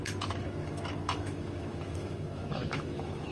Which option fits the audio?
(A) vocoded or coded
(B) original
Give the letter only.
A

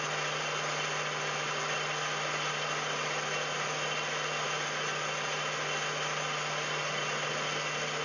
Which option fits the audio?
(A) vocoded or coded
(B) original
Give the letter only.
B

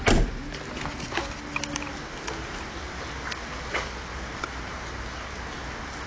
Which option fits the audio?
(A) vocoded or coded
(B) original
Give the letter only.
B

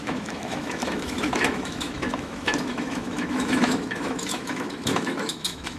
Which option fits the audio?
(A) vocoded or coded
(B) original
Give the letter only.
A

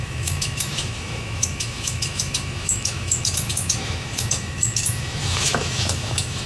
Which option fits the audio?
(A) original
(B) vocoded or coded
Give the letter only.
B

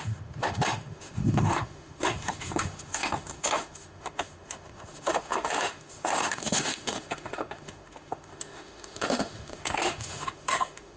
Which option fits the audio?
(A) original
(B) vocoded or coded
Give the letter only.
B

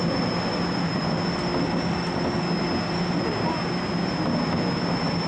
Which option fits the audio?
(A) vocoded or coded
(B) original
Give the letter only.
B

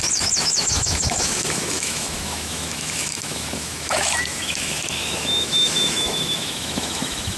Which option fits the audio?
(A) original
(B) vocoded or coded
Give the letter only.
B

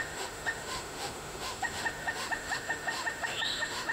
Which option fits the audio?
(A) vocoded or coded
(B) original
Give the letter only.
A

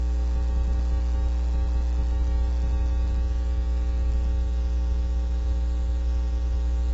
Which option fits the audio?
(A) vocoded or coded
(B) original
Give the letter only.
B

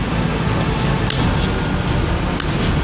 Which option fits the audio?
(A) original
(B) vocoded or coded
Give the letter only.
A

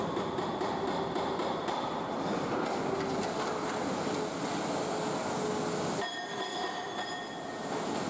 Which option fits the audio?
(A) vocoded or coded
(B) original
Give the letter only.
B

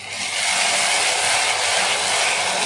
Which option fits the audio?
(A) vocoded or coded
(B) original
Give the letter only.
B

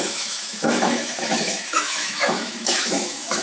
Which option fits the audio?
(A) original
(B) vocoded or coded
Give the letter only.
B